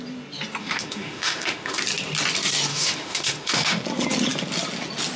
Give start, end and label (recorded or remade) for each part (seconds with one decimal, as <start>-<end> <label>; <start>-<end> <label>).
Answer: 0.0-0.6 recorded; 0.6-1.8 remade; 1.8-2.7 recorded; 2.7-3.8 remade; 3.8-5.2 recorded